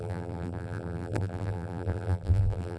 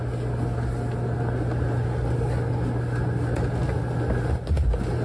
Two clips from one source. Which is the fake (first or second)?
first